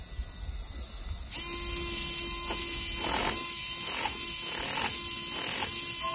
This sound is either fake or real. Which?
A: real